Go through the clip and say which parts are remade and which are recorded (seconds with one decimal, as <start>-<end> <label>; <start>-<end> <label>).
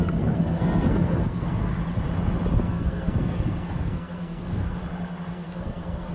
0.0-1.7 remade; 1.7-2.6 recorded; 2.6-4.8 remade; 4.8-5.3 recorded; 5.3-6.1 remade